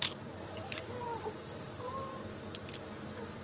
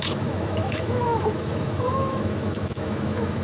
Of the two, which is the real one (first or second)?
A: first